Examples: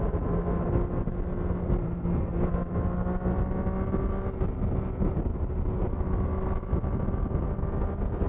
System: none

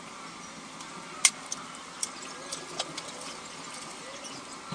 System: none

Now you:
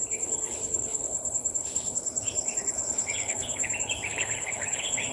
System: codec, HILCodec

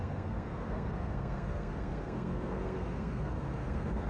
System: codec, SNAC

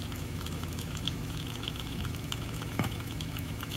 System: autoencoder, DAC-VAE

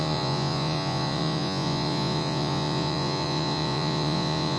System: vocoder, Vocos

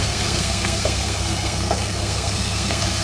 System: codec, SNAC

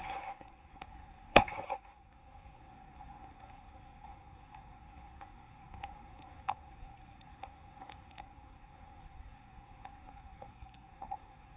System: codec, SNAC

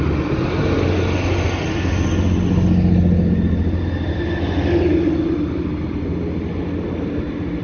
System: none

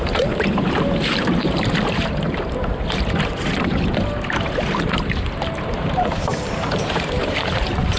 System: vocoder, BigVGAN v2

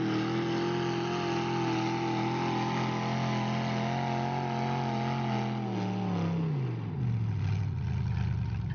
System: none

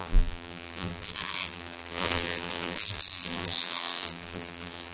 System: vocoder, BigVGAN v2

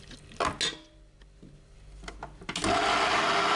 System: none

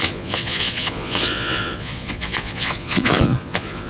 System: vocoder, Vocos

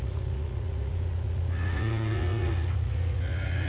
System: vocoder, Vocos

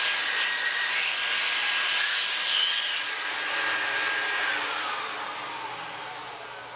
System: none